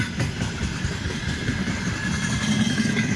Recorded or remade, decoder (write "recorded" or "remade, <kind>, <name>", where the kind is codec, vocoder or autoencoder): recorded